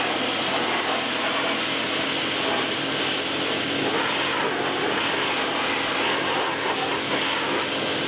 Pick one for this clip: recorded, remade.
recorded